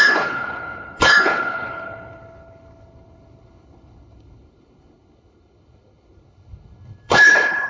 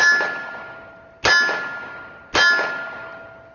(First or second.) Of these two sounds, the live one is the second